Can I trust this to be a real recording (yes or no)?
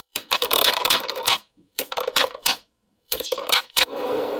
no